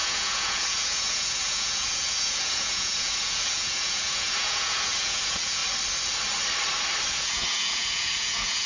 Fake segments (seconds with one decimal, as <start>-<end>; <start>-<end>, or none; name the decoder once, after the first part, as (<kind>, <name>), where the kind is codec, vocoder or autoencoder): 0.0-5.6 (vocoder, Vocos); 7.1-8.7